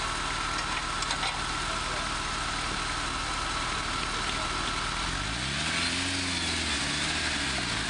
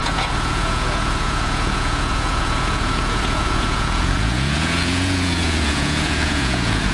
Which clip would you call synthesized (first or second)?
second